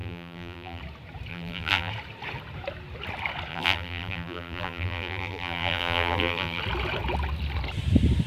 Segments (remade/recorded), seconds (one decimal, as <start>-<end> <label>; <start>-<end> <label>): 0.0-0.8 remade; 0.8-1.3 recorded; 1.3-1.9 remade; 1.9-3.5 recorded; 3.5-6.6 remade; 6.6-8.3 recorded

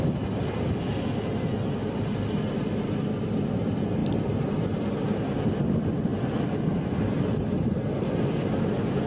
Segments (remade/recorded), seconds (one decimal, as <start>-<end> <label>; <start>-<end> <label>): 0.0-4.0 recorded; 4.0-5.6 remade; 5.6-9.1 recorded

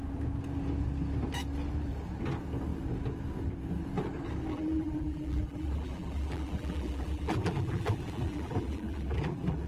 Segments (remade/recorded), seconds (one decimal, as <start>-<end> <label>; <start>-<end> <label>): 0.0-4.5 recorded; 4.5-9.7 remade

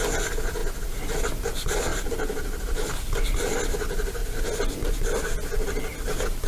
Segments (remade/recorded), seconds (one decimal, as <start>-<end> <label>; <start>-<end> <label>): 0.0-1.9 recorded; 1.9-2.9 remade; 2.9-6.5 recorded

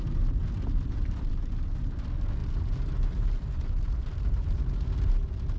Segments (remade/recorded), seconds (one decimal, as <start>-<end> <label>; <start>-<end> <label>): 0.0-0.4 recorded; 0.4-1.3 remade; 1.3-2.4 recorded; 2.4-5.1 remade; 5.1-5.6 recorded

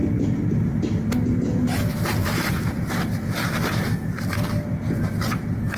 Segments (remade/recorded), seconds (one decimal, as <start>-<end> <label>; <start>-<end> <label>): 0.0-2.2 recorded; 2.2-5.1 remade; 5.1-5.8 recorded

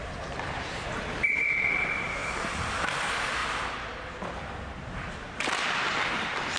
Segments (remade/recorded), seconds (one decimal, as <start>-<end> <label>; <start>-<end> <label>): 0.0-2.2 remade; 2.2-2.7 recorded; 2.7-6.6 remade